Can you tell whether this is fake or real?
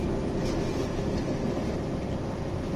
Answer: real